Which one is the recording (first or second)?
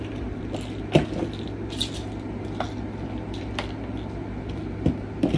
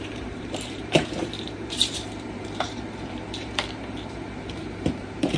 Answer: first